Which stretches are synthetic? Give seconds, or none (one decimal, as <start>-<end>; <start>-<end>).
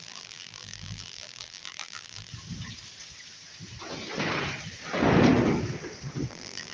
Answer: 0.0-2.3; 6.3-6.7